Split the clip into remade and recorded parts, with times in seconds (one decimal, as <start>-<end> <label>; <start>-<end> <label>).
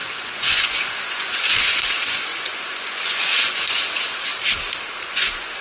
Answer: 0.0-4.3 remade; 4.3-5.1 recorded; 5.1-5.6 remade